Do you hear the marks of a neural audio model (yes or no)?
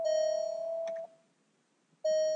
no